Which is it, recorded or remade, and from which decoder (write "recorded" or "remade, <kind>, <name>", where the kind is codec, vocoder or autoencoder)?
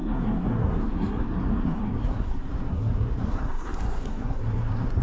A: remade, codec, SNAC